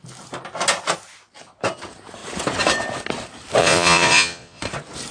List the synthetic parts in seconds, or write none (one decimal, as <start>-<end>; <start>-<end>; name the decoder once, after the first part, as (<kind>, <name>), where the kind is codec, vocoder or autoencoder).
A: 3.6-4.6 (vocoder, Vocos)